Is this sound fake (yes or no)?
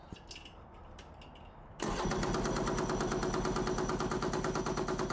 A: no